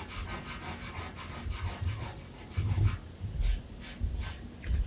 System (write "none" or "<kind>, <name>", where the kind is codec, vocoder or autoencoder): none